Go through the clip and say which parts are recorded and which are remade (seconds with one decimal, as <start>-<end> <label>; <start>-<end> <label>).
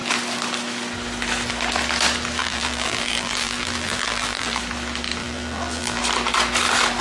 0.0-2.4 recorded; 2.4-4.6 remade; 4.6-5.2 recorded; 5.2-6.0 remade; 6.0-7.0 recorded